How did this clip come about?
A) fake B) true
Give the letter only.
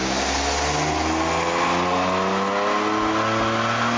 B